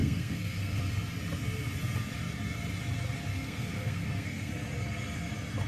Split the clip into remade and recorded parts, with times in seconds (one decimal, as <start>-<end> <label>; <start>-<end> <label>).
0.0-0.8 remade; 0.8-3.3 recorded; 3.3-4.5 remade; 4.5-5.7 recorded